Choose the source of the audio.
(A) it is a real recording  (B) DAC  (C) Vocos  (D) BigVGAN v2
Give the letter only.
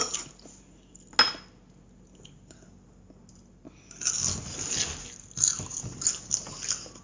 A